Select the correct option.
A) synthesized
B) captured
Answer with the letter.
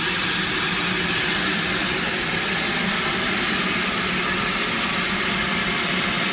B